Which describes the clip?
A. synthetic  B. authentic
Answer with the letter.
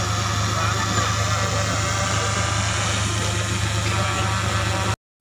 B